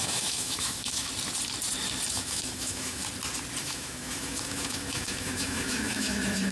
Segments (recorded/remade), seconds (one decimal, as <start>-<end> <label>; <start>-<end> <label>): 0.0-1.1 remade; 1.1-2.1 recorded; 2.1-3.0 remade; 3.0-3.6 recorded; 3.6-6.5 remade